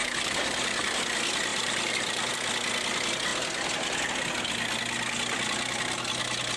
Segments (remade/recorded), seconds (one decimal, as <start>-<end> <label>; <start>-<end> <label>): 0.0-1.0 remade; 1.0-1.5 recorded; 1.5-2.3 remade; 2.3-6.6 recorded